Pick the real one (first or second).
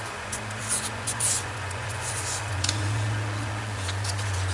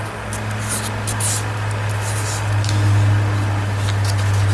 second